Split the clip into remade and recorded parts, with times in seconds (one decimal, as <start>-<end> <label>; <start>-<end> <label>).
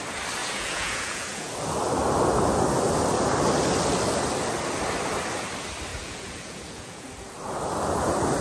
0.0-0.4 recorded; 0.4-1.5 remade; 1.5-5.9 recorded; 5.9-7.1 remade; 7.1-8.4 recorded